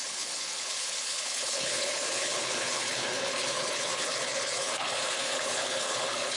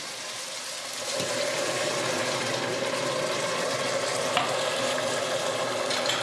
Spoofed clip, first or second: first